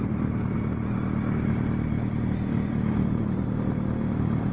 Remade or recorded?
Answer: remade